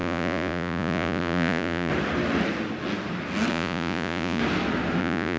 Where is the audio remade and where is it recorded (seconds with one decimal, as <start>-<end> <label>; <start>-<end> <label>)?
0.0-1.9 remade; 1.9-3.5 recorded; 3.5-4.4 remade; 4.4-5.0 recorded; 5.0-5.4 remade